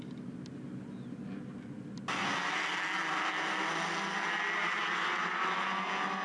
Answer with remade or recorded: recorded